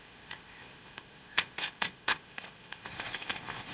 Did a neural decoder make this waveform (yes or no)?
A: yes